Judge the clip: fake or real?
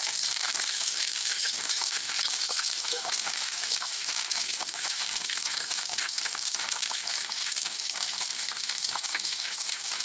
fake